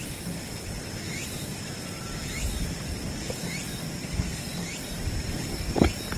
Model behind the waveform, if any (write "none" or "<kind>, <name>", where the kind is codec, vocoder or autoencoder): vocoder, BigVGAN v2